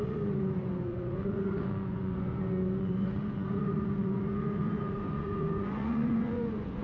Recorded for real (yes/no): no